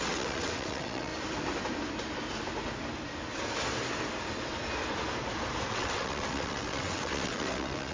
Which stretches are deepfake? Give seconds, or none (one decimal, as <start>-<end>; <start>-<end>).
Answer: 0.0-1.1; 5.7-7.9